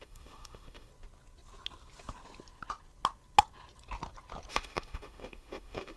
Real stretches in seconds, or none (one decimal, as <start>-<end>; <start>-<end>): 0.9-4.5